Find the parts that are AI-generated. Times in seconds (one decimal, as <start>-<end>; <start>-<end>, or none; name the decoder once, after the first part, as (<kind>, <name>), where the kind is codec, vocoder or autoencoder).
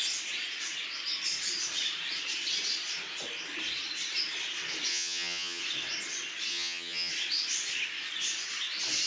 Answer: 4.9-5.6 (vocoder, HiFi-GAN); 6.5-7.1